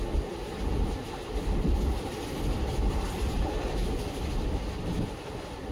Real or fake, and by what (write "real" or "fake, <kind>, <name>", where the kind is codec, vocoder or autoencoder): real